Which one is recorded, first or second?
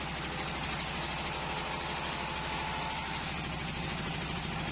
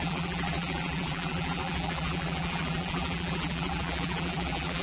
first